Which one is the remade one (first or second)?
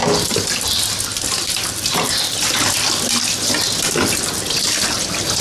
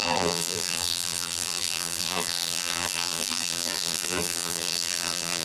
second